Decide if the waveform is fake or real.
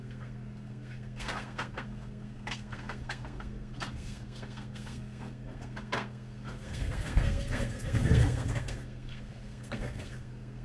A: fake